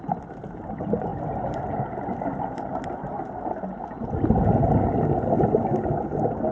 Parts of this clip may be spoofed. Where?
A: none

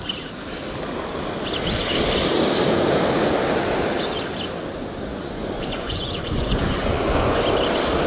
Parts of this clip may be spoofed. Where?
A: 5.1-7.4

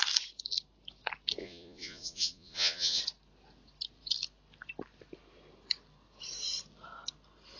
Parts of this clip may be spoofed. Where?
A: 1.4-3.0

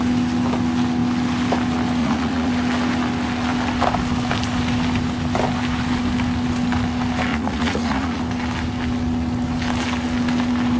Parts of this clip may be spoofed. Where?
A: 2.0-2.5; 7.3-8.2